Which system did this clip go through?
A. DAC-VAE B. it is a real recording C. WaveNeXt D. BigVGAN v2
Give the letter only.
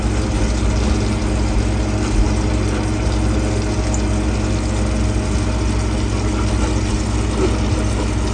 B